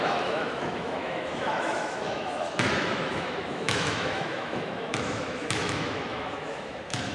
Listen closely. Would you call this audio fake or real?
fake